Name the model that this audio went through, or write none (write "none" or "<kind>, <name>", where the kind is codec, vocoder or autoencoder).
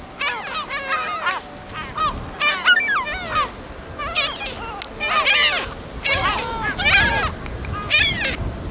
none